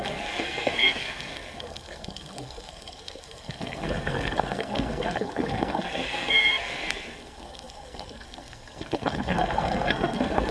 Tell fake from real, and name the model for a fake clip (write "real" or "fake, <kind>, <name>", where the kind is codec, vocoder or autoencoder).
fake, codec, SNAC